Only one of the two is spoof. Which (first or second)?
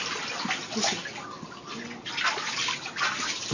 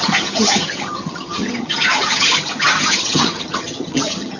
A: second